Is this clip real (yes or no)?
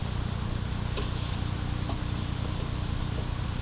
yes